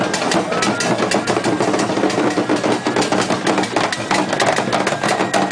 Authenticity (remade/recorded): recorded